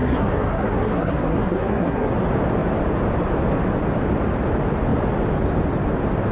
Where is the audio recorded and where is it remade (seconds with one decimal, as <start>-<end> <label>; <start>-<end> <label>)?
0.0-2.1 remade; 2.1-6.3 recorded